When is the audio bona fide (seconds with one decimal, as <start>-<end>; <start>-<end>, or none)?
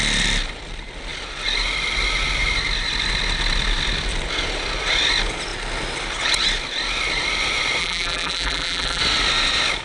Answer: 0.0-7.8; 9.0-9.8